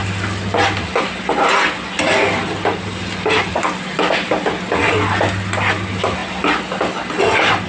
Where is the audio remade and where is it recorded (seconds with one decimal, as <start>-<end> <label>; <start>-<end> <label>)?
0.0-7.7 recorded